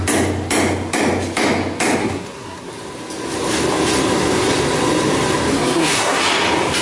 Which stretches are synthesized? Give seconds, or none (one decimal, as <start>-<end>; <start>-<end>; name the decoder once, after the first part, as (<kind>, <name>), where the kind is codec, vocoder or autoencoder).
2.0-2.7 (codec, SNAC); 5.5-6.2